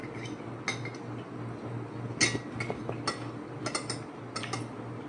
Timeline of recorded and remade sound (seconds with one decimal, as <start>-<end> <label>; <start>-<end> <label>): 0.0-5.1 recorded